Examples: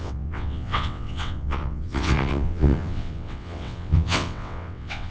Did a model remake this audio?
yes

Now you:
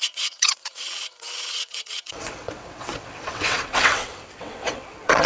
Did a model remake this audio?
yes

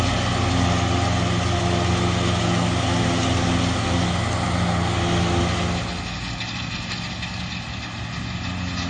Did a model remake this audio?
no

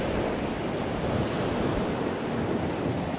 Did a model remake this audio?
no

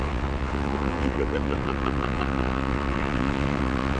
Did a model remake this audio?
yes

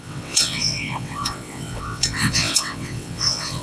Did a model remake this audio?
yes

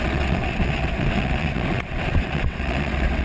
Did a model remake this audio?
yes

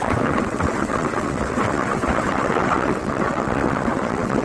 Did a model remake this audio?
yes